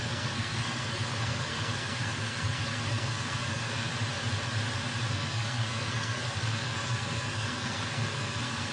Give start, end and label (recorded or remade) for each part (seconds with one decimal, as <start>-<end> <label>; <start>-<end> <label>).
0.0-3.9 remade; 3.9-5.1 recorded; 5.1-8.7 remade